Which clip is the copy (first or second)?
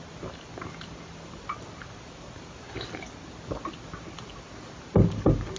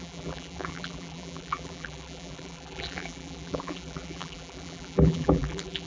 second